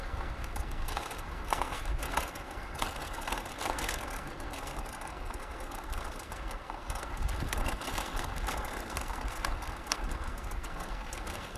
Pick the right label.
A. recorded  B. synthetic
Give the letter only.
B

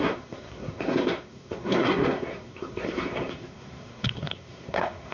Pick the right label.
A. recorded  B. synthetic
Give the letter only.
B